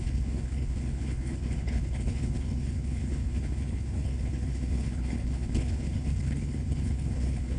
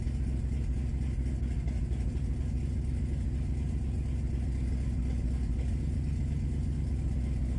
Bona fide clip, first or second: second